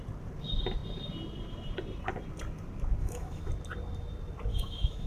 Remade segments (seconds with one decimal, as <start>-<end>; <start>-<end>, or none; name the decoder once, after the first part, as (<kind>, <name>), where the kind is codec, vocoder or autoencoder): 3.0-3.5 (autoencoder, DAC-VAE); 4.5-5.1